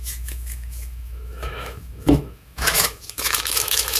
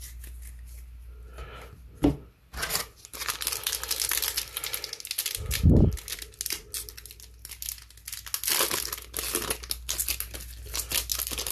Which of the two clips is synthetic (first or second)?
first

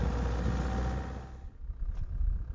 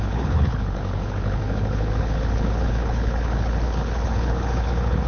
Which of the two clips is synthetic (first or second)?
second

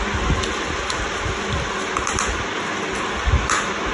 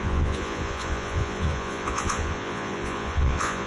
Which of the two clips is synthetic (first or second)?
second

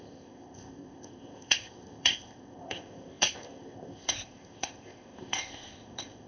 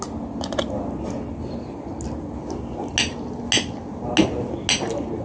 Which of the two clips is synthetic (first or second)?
first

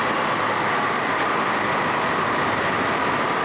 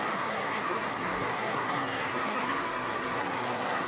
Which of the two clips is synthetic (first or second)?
second